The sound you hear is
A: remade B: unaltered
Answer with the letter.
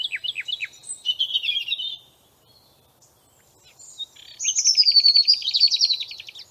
B